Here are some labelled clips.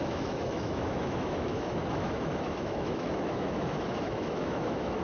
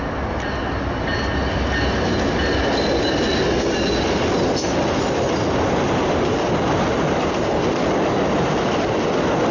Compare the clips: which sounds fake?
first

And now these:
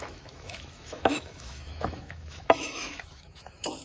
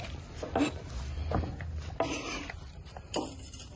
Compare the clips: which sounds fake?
first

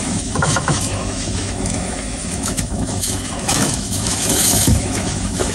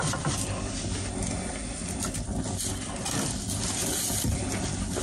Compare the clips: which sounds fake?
first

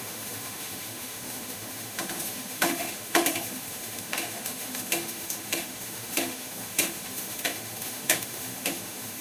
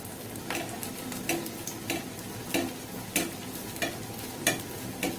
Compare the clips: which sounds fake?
first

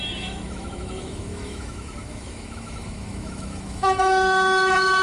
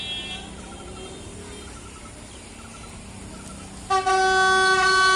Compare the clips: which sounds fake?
first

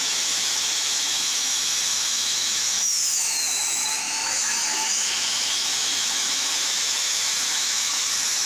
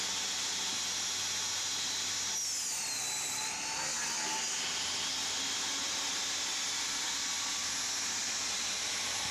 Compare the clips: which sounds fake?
first